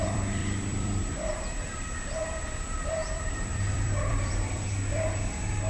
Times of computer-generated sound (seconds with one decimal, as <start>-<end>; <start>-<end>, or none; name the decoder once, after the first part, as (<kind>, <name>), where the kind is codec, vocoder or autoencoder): 0.0-5.7 (vocoder, BigVGAN v2)